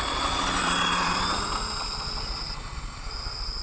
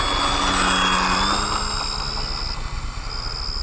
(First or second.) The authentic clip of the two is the second